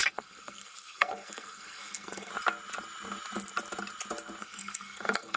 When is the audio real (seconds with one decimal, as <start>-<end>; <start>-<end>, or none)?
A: 2.3-4.4

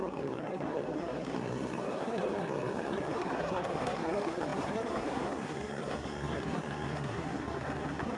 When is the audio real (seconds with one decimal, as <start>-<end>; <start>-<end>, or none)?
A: none

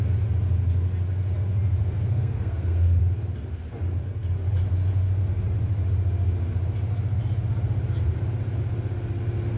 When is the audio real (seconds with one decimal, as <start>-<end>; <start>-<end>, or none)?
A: 0.0-1.8; 3.0-9.6

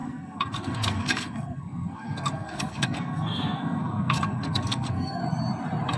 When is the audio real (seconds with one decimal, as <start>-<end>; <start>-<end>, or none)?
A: 5.2-6.0

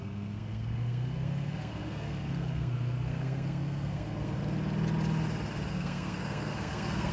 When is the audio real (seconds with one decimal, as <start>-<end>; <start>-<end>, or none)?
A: 4.4-5.7

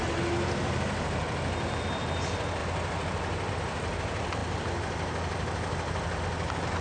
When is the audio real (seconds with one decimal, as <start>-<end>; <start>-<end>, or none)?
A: 0.0-6.8

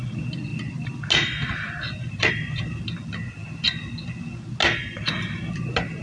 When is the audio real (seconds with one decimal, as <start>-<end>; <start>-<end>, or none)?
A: 0.0-6.0

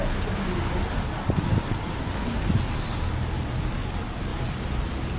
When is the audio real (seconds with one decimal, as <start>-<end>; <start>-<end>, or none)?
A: 0.0-5.2